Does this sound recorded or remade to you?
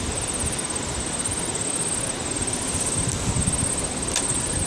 recorded